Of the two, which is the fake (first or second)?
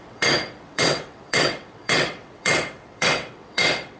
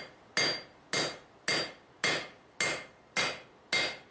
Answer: first